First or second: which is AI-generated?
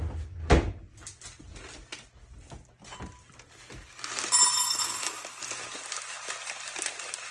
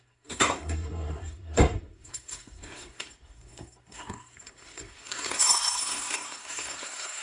second